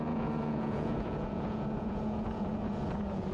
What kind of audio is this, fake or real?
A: fake